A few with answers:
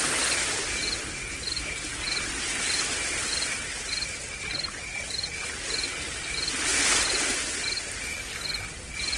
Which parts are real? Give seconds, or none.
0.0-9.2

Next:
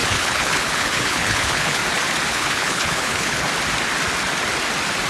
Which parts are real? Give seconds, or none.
1.8-2.3; 3.5-5.1